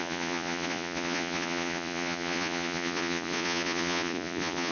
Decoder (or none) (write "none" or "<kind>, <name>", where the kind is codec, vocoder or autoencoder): vocoder, Vocos